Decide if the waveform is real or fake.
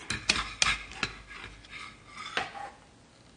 real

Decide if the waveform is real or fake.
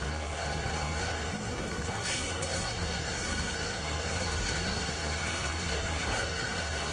fake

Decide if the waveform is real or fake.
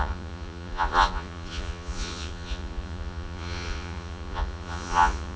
fake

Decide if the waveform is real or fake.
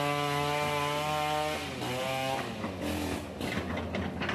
real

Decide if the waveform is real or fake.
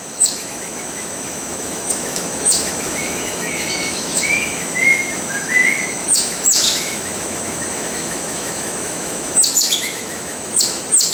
fake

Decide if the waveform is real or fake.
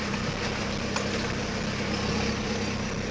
real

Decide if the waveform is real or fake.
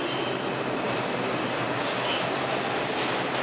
real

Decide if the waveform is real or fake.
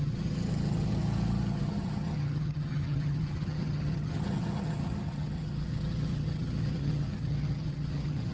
fake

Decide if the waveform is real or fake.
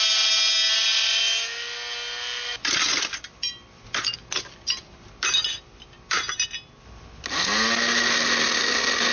real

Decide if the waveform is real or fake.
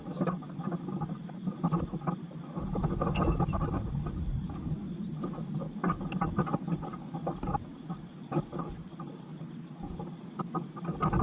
real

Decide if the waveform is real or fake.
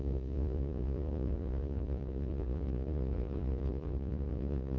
fake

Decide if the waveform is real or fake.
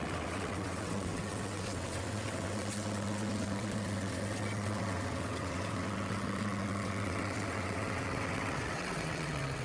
fake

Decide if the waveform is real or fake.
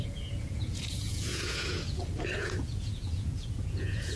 fake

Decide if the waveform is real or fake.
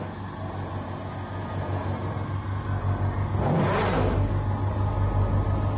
real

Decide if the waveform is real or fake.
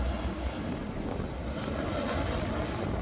real